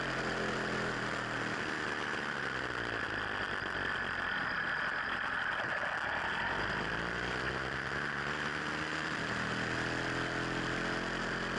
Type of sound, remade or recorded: recorded